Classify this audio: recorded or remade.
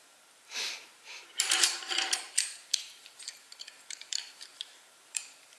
remade